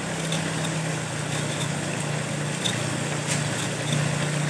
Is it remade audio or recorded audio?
recorded